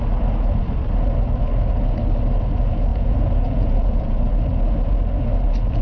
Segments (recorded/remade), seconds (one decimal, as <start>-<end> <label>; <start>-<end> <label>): 0.0-2.9 recorded; 2.9-4.2 remade; 4.2-5.8 recorded

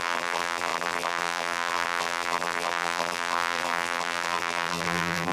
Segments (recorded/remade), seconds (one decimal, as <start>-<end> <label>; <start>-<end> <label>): 0.0-5.3 remade